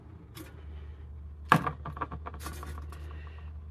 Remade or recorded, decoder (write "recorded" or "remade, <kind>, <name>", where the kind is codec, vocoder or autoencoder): recorded